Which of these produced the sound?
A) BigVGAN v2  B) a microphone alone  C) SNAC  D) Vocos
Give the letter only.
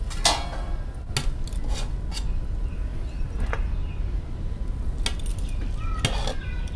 B